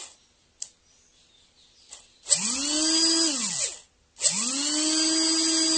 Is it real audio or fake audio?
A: real